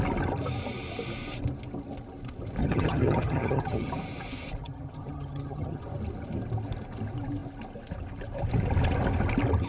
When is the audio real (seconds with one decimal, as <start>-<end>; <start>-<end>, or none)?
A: 0.0-2.6; 3.9-4.6; 5.8-9.7